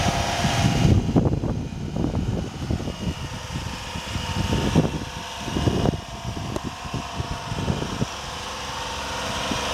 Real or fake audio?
real